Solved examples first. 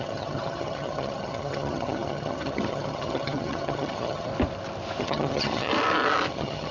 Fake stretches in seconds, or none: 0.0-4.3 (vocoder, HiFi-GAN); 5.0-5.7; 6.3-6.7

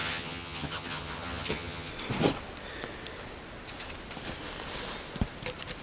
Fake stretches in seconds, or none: 0.0-1.9 (vocoder, HiFi-GAN)

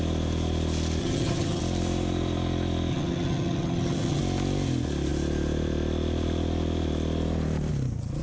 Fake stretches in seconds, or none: 1.0-1.6 (vocoder, HiFi-GAN); 2.9-4.2